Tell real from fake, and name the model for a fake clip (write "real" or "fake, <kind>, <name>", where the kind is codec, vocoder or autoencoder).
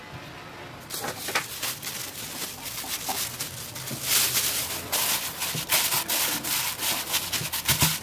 real